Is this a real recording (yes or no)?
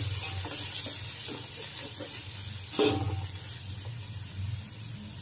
yes